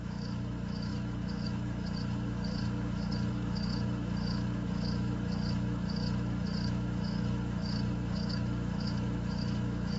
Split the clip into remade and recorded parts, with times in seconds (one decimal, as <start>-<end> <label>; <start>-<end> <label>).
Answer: 0.0-10.0 remade